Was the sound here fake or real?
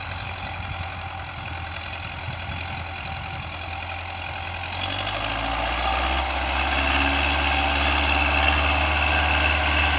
real